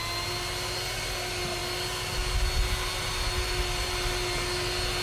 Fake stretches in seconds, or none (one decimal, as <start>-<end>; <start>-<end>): none